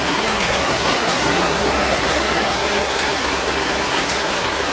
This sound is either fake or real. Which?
fake